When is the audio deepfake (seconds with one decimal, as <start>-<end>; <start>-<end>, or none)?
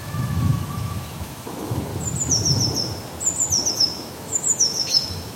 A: 0.0-1.9; 3.7-5.4